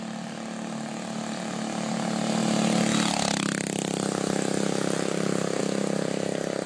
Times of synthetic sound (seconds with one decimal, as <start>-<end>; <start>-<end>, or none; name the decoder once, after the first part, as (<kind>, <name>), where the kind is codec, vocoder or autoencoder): none